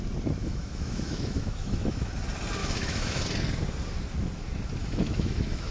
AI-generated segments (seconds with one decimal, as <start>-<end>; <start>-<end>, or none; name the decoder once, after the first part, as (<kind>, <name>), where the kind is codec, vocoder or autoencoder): 0.4-2.1 (autoencoder, DAC-VAE); 2.6-3.2; 4.8-5.7